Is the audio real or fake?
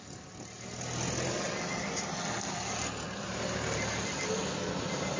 real